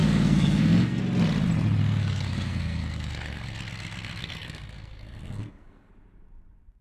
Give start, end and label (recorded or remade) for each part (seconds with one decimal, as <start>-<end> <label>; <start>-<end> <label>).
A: 0.0-1.0 remade; 1.0-1.8 recorded; 1.8-5.9 remade; 5.9-6.8 recorded